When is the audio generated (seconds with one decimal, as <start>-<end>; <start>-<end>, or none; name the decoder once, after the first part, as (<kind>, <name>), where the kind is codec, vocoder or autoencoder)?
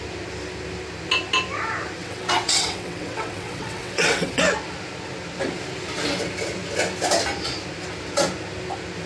2.0-4.4 (vocoder, WaveNeXt)